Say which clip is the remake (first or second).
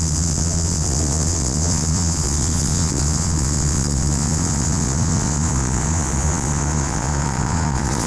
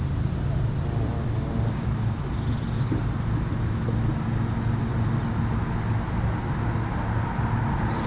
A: first